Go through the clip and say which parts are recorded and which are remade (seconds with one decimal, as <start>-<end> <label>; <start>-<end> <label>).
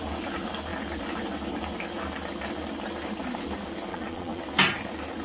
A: 0.0-3.9 recorded; 3.9-4.4 remade; 4.4-5.2 recorded